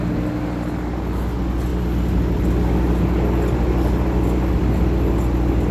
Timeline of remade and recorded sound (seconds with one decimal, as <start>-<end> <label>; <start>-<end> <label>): 0.0-5.7 recorded